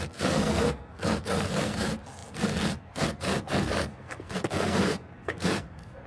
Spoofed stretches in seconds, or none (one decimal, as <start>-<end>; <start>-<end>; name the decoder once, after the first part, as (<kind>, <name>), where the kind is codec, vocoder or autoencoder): 0.0-6.1 (codec, SNAC)